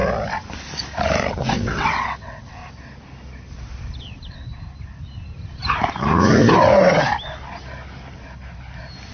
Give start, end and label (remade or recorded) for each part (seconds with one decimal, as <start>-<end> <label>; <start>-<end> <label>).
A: 0.0-1.4 recorded; 1.4-2.6 remade; 2.6-4.0 recorded; 4.0-4.5 remade; 4.5-9.1 recorded